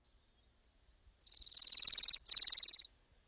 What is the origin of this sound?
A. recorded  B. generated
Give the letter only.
A